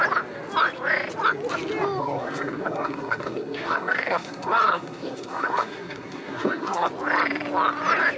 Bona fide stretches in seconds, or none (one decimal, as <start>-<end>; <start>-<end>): 0.0-2.0; 6.9-8.2